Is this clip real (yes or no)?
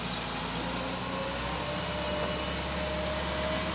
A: yes